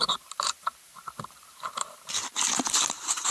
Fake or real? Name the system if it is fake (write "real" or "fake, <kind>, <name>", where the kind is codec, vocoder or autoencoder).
fake, vocoder, BigVGAN v2